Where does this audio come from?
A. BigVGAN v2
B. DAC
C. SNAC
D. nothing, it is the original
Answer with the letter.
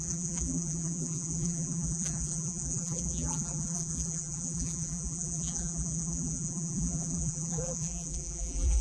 A